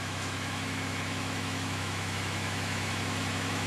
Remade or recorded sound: remade